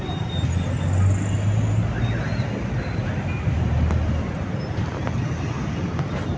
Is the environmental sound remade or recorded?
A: recorded